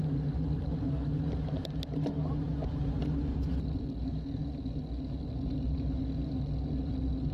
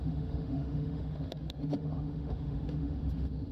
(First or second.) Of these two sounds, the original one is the first